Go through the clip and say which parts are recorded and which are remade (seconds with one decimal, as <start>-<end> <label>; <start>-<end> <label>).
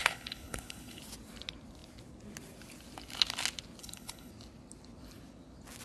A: 0.0-1.0 remade; 1.0-3.8 recorded; 3.8-4.3 remade; 4.3-5.8 recorded